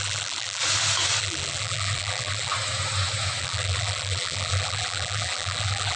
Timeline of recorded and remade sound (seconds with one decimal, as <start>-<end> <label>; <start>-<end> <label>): 0.0-0.6 remade; 0.6-1.2 recorded; 1.2-2.5 remade; 2.5-3.4 recorded; 3.4-6.0 remade